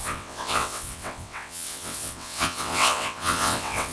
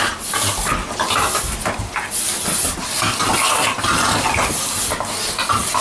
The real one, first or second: second